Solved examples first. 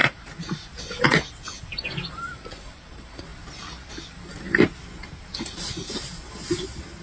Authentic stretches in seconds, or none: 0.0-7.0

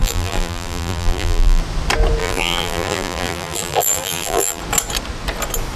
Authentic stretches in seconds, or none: 1.6-2.2; 4.6-5.8

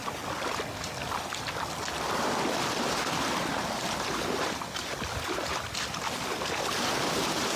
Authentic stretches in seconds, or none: 0.0-7.6

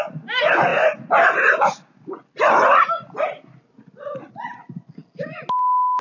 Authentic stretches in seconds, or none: 0.0-6.0

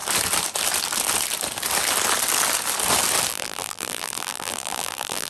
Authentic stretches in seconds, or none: 0.0-3.3